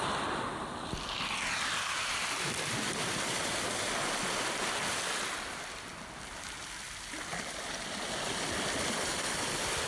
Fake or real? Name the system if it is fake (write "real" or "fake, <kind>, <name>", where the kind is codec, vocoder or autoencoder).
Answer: real